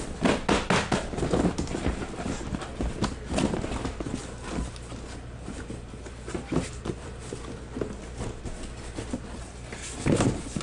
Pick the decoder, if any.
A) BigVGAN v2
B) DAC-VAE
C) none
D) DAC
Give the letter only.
C